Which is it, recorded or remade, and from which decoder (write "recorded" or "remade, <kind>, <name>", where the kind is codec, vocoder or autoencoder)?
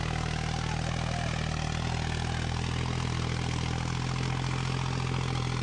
recorded